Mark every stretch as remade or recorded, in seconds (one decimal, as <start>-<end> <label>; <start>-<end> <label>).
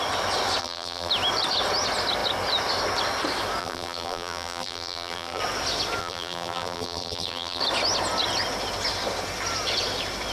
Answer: 0.0-0.6 recorded; 0.6-1.1 remade; 1.1-3.6 recorded; 3.6-5.4 remade; 5.4-6.0 recorded; 6.0-7.6 remade; 7.6-10.3 recorded